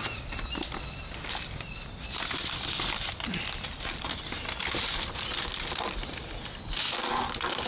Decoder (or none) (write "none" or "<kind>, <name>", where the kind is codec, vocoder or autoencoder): vocoder, BigVGAN v2